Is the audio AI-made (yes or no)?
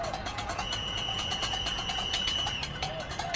yes